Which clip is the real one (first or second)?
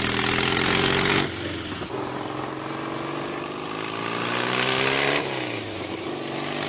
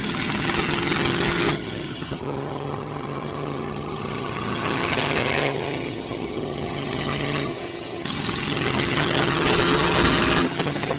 first